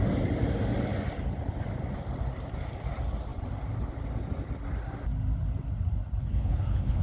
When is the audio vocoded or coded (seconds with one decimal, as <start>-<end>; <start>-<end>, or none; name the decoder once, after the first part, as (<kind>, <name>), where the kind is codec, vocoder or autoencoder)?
6.2-7.0 (codec, HILCodec)